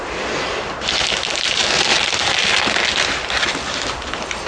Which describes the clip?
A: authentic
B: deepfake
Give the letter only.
B